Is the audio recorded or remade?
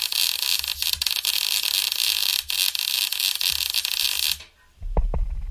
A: recorded